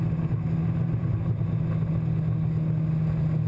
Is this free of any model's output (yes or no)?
yes